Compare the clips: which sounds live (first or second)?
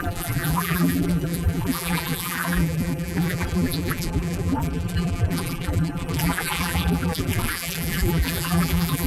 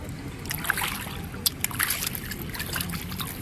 second